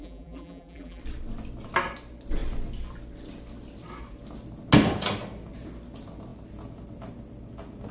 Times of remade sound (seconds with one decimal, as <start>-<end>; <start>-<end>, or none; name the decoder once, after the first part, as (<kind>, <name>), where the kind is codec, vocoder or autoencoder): 0.0-1.0 (vocoder, BigVGAN v2)